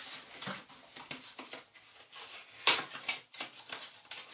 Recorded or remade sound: recorded